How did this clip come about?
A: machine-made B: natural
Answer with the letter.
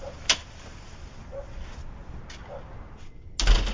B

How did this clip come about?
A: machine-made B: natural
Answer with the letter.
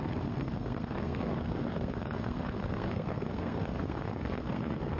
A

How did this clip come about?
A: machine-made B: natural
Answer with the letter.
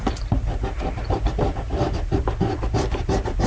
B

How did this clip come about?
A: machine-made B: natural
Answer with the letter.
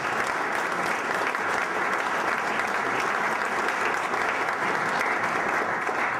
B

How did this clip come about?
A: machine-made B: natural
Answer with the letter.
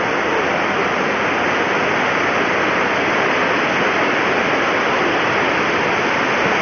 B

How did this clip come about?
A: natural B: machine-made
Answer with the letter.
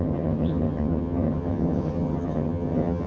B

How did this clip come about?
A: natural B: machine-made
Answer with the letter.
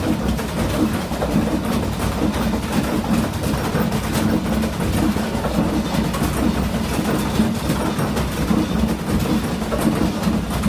A